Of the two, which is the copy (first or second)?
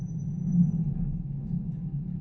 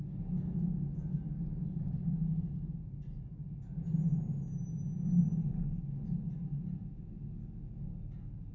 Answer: first